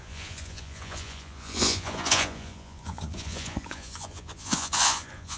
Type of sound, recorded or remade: remade